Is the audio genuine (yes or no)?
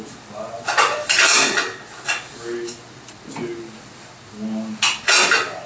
yes